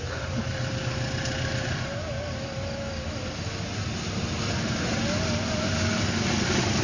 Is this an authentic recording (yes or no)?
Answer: yes